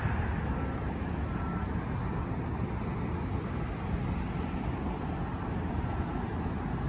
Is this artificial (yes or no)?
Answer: no